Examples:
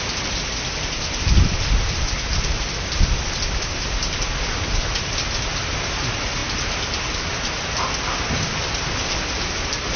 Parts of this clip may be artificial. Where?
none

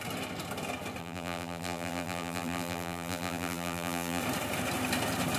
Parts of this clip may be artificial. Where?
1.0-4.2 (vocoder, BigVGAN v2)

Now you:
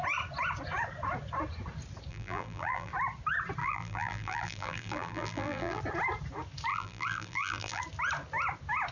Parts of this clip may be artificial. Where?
2.1-2.9 (vocoder, BigVGAN v2); 3.6-5.8; 6.7-7.8